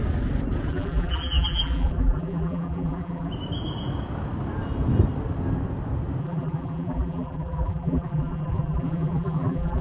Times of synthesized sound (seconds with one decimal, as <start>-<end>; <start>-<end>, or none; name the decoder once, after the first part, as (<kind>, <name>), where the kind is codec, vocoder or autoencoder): 0.7-3.3 (vocoder, BigVGAN v2); 6.2-9.8